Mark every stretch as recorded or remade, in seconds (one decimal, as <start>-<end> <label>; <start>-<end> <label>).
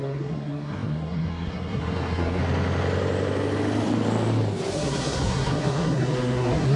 0.0-2.4 remade; 2.4-4.7 recorded; 4.7-6.8 remade